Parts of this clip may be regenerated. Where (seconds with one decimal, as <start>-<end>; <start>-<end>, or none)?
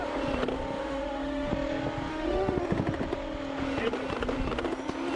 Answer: 0.8-1.5; 2.1-2.6